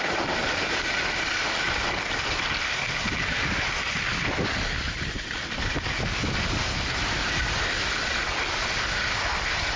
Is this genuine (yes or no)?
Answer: yes